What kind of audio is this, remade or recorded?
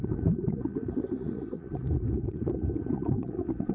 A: remade